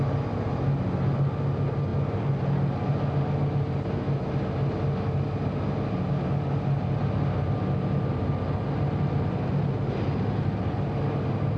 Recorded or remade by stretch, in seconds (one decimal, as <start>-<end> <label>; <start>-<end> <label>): 0.0-11.6 recorded